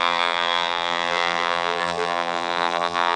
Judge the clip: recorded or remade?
remade